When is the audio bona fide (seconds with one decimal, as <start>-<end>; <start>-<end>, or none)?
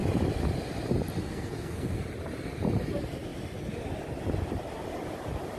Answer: 0.0-1.2; 2.0-5.6